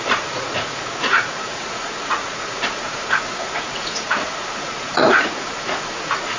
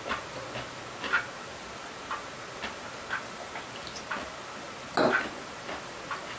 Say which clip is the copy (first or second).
first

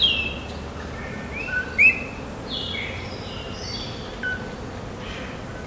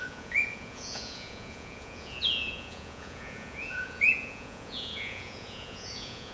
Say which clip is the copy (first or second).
second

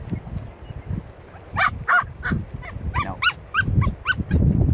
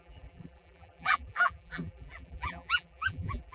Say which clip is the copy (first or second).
second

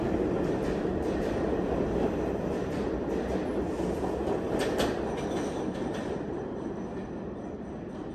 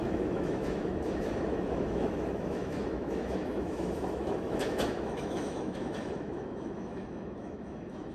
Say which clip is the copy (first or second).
second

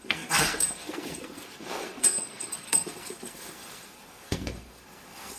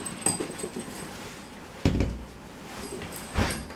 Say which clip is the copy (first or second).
first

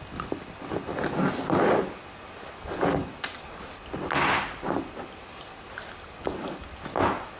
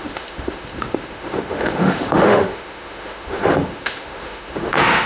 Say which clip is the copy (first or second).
second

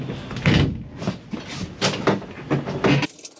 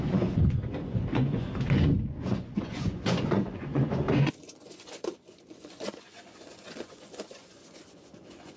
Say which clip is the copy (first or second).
second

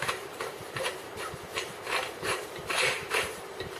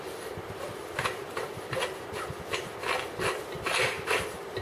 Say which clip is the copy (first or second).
first